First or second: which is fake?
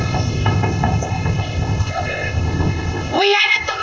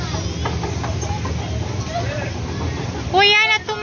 first